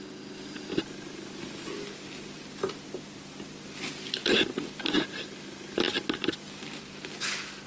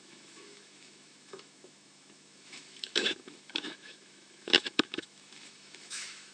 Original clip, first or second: first